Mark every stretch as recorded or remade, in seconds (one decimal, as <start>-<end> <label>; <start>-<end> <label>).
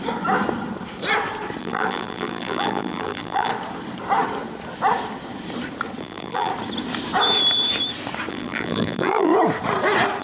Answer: 0.0-1.6 recorded; 1.6-3.5 remade; 3.5-6.0 recorded; 6.0-6.5 remade; 6.5-8.3 recorded; 8.3-9.3 remade; 9.3-10.2 recorded